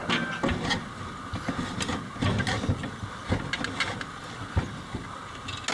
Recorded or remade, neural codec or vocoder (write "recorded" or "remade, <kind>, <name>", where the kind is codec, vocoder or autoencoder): recorded